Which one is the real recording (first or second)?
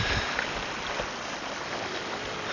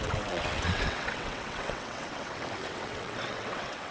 first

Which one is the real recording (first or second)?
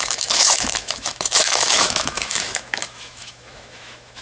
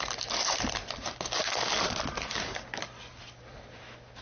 second